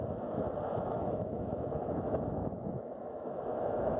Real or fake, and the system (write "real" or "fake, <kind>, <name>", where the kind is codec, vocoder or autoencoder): fake, autoencoder, DAC-VAE